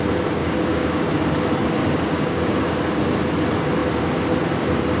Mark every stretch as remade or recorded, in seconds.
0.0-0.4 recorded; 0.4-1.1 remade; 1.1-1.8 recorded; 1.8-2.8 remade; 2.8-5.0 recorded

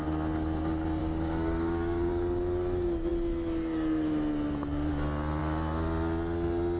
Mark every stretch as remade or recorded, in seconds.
0.0-1.0 recorded; 1.0-2.1 remade; 2.1-6.8 recorded